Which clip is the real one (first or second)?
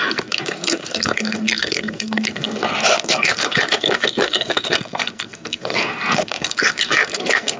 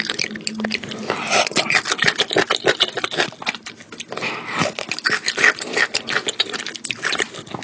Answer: second